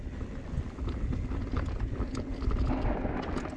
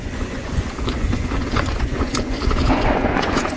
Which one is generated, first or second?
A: second